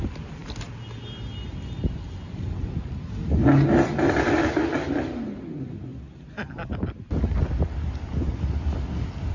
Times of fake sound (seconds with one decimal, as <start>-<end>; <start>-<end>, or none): none

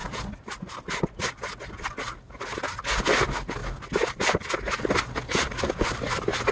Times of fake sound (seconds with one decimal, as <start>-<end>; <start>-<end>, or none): none

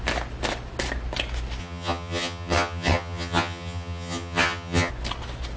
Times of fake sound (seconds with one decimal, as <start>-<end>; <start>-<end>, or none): 1.6-4.9

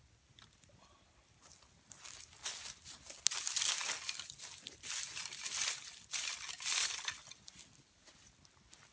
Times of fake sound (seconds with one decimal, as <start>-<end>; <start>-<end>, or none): none

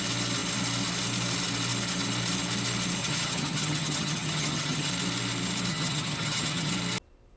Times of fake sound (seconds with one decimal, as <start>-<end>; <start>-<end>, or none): 3.0-4.9; 5.7-6.7

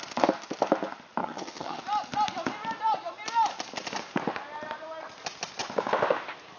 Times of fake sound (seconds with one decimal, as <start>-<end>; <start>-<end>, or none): 1.2-1.8